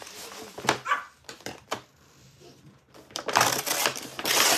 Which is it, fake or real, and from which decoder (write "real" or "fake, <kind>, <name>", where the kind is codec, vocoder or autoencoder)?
fake, vocoder, BigVGAN v2